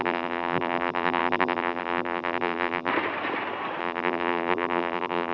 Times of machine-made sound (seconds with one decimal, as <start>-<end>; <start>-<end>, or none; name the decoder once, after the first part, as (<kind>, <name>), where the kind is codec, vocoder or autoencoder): 0.0-2.9 (vocoder, BigVGAN v2); 3.8-5.3